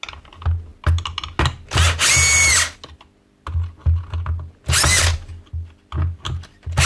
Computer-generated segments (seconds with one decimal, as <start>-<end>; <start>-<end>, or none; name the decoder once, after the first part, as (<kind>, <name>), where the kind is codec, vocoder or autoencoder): none